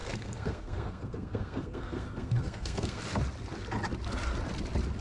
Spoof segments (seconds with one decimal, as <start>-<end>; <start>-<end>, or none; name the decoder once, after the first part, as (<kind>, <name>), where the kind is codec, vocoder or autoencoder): 0.0-3.0 (codec, SNAC)